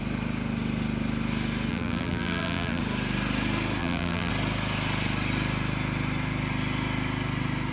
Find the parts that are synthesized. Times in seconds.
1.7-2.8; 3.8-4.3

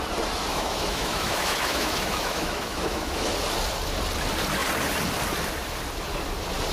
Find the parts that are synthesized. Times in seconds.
0.5-3.3

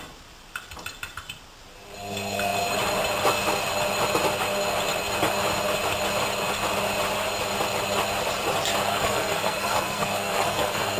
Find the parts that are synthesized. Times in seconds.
8.9-11.0

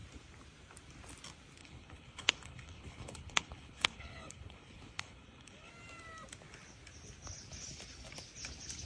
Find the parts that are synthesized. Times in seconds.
1.6-5.7